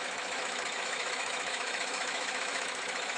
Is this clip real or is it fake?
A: fake